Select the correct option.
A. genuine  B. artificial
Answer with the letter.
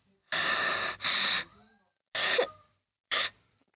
A